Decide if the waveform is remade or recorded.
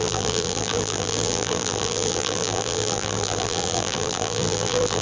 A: remade